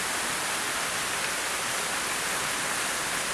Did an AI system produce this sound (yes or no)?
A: no